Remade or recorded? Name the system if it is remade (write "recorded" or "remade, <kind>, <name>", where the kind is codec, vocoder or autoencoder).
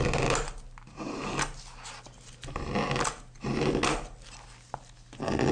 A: recorded